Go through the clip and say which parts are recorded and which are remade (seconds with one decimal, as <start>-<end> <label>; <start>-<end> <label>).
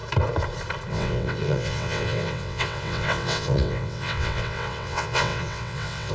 0.0-0.9 recorded; 0.9-6.1 remade